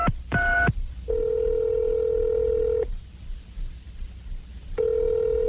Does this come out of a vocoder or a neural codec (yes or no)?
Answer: no